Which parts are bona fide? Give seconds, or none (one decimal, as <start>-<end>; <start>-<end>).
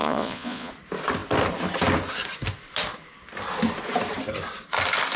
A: 0.7-5.2